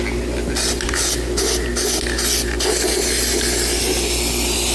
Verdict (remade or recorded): recorded